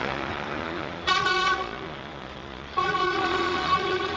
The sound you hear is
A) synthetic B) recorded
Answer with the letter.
A